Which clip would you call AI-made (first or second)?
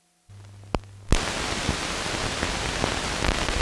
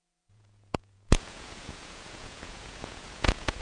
second